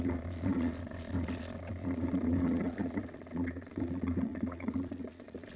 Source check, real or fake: fake